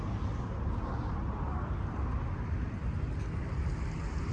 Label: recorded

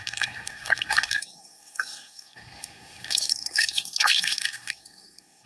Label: remade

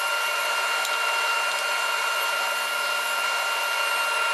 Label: recorded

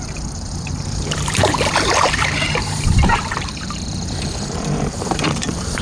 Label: remade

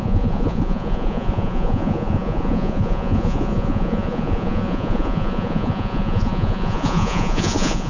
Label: remade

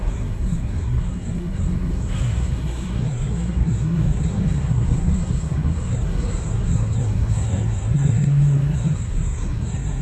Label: remade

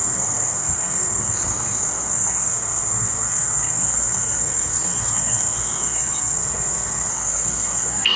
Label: remade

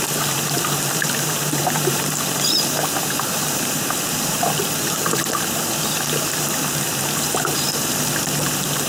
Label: remade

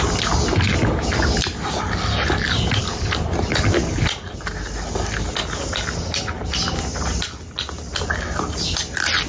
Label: recorded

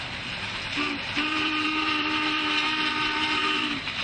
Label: remade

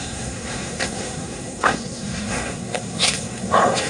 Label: remade